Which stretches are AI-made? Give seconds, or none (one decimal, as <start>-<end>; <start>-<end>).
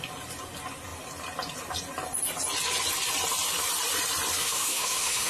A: 4.4-5.3